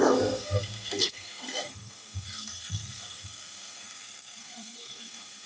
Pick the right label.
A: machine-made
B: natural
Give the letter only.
A